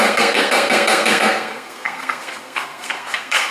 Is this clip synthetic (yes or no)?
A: yes